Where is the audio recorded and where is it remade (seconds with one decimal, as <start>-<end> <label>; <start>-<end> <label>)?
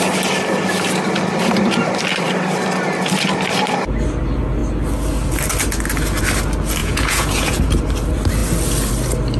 0.0-6.8 recorded; 6.8-7.7 remade; 7.7-9.4 recorded